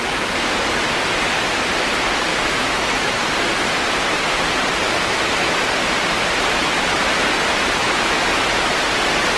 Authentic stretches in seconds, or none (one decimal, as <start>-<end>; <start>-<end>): 0.0-2.3; 3.3-7.8; 8.4-9.4